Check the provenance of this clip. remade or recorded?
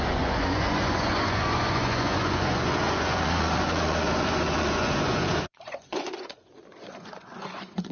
remade